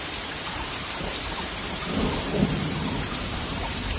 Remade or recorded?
remade